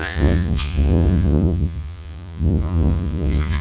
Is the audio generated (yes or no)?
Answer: yes